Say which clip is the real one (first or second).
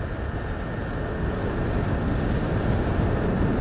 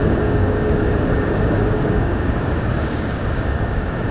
first